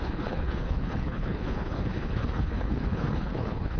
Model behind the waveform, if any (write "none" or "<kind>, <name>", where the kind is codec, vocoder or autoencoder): codec, HILCodec